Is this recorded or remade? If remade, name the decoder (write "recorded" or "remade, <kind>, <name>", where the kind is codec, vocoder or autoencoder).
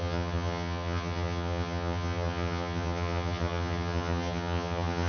remade, vocoder, HiFi-GAN